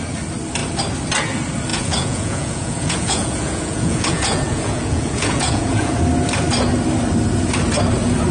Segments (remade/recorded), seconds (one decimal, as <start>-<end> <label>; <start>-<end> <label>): 0.0-1.7 recorded; 1.7-5.9 remade; 5.9-8.3 recorded